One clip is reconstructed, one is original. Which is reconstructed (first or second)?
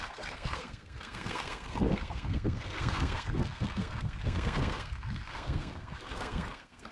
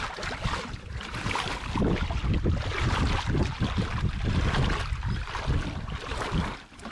first